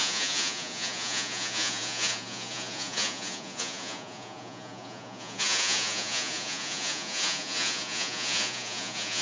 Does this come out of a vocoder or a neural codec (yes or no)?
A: yes